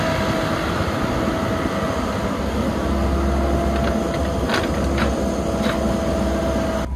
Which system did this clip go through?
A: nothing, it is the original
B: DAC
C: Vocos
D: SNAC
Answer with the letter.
A